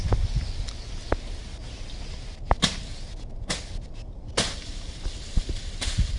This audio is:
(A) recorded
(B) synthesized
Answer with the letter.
A